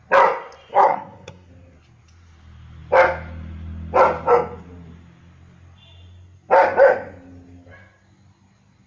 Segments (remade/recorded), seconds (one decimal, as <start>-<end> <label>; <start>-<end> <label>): 0.0-0.7 recorded; 0.7-1.5 remade; 1.5-8.9 recorded